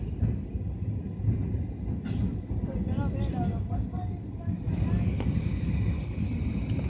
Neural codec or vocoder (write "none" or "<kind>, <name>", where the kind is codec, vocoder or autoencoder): none